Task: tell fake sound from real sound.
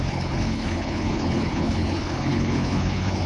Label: fake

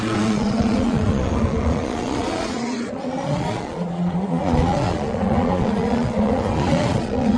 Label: fake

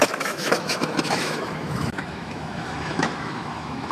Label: fake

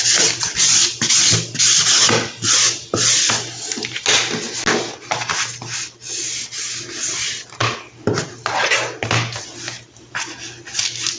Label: real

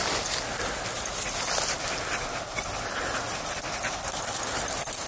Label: real